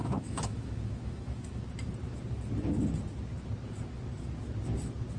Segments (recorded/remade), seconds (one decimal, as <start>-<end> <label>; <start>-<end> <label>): 0.0-1.6 remade; 1.6-5.2 recorded